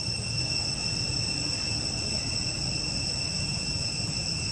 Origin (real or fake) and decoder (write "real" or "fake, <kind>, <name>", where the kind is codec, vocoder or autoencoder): real